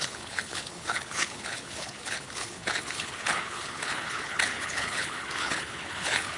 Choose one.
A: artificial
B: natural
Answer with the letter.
A